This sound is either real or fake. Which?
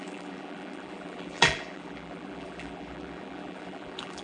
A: fake